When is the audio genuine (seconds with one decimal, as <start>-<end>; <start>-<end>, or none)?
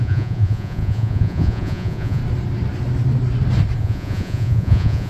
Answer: 2.2-3.8